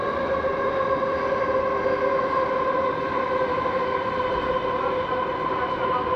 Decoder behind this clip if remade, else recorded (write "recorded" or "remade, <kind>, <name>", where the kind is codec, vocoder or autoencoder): recorded